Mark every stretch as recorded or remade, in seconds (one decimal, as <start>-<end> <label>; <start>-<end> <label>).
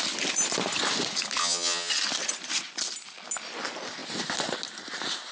0.0-1.4 recorded; 1.4-1.9 remade; 1.9-5.3 recorded